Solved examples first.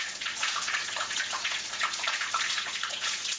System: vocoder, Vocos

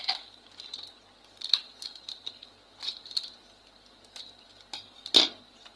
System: none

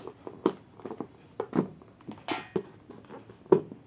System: none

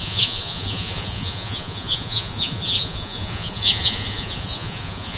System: vocoder, Vocos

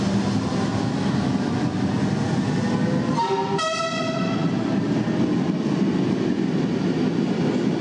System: none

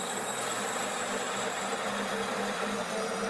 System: vocoder, BigVGAN v2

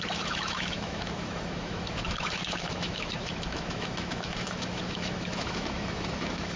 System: autoencoder, DAC-VAE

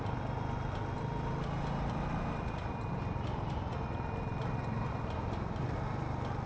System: none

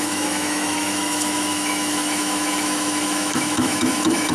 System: autoencoder, DAC-VAE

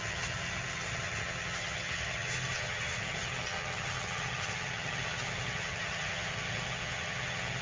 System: vocoder, HiFi-GAN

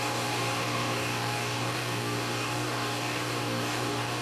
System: codec, DAC